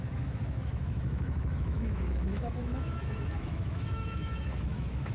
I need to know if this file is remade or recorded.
remade